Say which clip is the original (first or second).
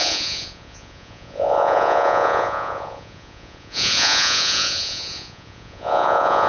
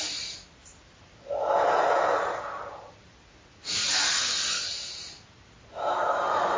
second